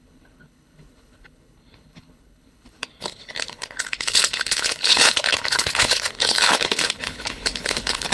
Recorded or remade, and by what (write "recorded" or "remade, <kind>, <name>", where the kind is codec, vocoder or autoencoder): remade, codec, HILCodec